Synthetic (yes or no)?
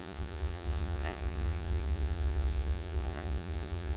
yes